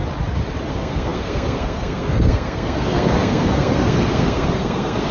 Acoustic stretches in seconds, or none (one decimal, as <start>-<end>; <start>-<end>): 0.0-0.7